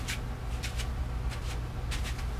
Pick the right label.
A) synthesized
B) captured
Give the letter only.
B